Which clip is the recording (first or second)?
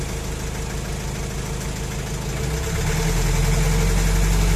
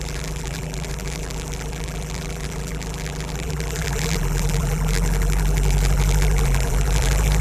first